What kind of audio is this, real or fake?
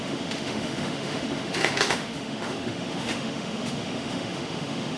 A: fake